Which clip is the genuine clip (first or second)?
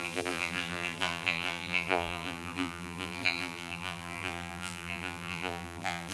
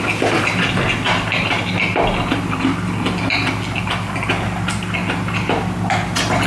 second